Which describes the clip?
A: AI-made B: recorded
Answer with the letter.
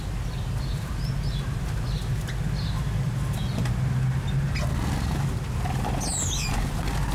B